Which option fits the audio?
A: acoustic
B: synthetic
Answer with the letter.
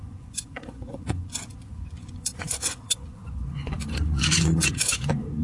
B